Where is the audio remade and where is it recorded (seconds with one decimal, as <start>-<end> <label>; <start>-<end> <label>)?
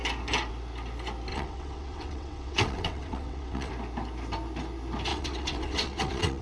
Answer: 0.0-1.3 recorded; 1.3-3.7 remade; 3.7-5.1 recorded; 5.1-6.4 remade